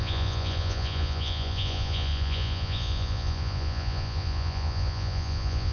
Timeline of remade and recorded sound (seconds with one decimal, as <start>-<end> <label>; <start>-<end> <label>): 0.0-5.7 remade

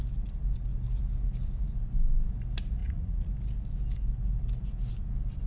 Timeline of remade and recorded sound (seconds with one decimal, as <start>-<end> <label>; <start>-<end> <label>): 0.0-2.8 recorded; 2.8-3.3 remade; 3.3-5.5 recorded

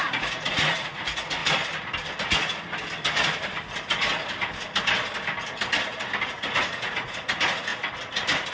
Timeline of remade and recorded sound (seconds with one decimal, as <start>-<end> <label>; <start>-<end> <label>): 0.0-1.4 remade; 1.4-6.3 recorded; 6.3-7.7 remade; 7.7-8.5 recorded

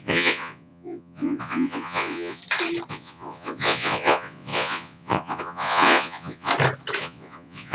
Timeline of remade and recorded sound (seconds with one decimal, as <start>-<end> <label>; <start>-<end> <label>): 0.0-2.4 remade; 2.4-2.9 recorded; 2.9-6.5 remade; 6.5-7.0 recorded; 7.0-7.7 remade

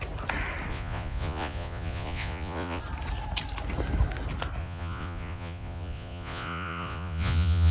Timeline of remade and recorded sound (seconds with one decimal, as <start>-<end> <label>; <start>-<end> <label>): 0.0-0.7 recorded; 0.7-2.8 remade; 2.8-4.6 recorded; 4.6-7.7 remade

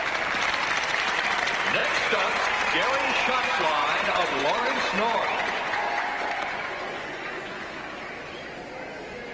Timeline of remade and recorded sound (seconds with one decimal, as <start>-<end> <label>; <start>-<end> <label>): 0.0-1.8 recorded; 1.8-2.5 remade; 2.5-3.8 recorded; 3.8-7.6 remade; 7.6-9.3 recorded

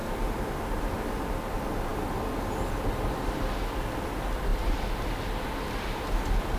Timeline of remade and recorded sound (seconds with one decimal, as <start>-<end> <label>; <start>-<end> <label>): 0.0-6.6 recorded

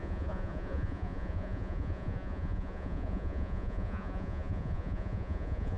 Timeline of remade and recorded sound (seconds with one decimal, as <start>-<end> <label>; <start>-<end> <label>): 0.0-5.8 remade